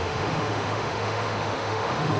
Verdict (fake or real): fake